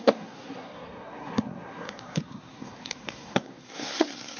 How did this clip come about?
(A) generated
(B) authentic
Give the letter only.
A